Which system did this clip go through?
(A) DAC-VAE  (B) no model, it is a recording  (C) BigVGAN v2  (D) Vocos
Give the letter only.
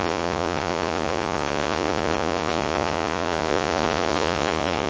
D